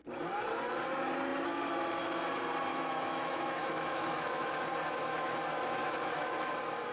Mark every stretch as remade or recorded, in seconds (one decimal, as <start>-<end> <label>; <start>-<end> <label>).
0.0-2.7 recorded; 2.7-4.6 remade; 4.6-5.8 recorded; 5.8-6.5 remade; 6.5-6.9 recorded